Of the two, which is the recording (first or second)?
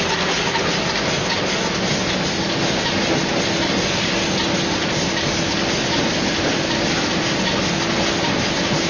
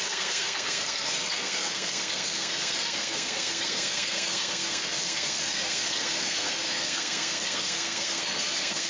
first